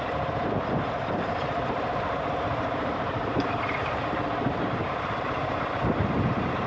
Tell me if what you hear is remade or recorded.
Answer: remade